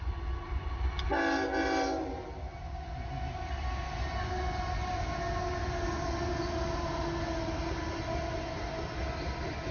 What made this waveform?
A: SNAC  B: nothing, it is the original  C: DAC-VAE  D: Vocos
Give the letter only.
B